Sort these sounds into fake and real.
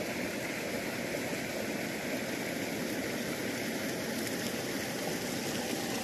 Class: real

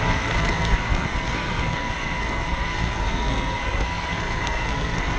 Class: fake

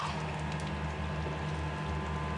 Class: real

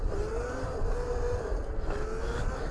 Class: real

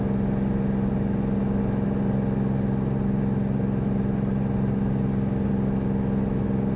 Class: real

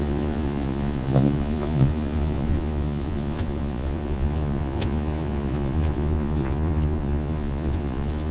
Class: fake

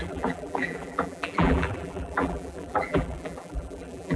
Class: fake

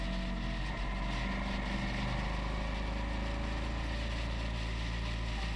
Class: real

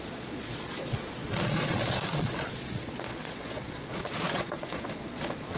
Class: fake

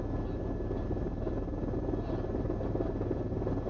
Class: real